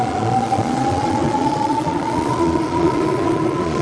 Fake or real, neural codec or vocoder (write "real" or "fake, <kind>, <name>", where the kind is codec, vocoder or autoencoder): fake, vocoder, Vocos